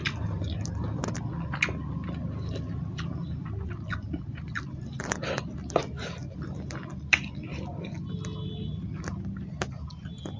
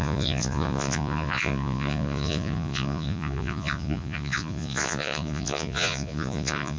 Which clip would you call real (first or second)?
first